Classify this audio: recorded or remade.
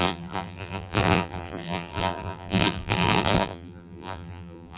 remade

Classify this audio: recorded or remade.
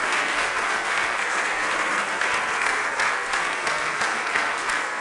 remade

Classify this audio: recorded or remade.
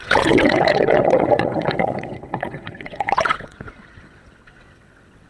remade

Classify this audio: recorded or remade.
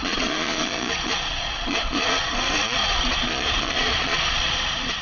remade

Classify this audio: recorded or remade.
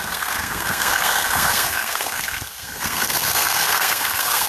remade